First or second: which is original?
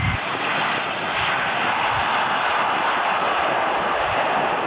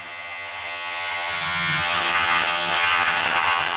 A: first